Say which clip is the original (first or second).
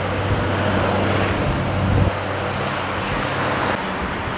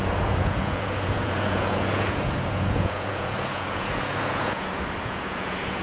first